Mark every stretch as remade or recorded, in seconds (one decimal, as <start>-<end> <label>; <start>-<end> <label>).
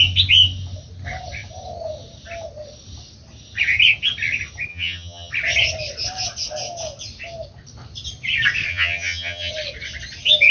0.0-4.7 recorded; 4.7-5.3 remade; 5.3-8.7 recorded; 8.7-9.5 remade; 9.5-10.5 recorded